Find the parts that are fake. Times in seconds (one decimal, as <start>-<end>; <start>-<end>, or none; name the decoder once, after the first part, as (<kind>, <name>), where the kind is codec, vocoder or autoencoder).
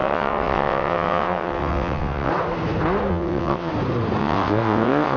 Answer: 0.0-2.3 (vocoder, WaveNeXt); 3.1-3.7; 4.2-5.2